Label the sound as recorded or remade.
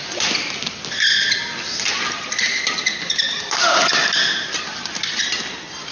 recorded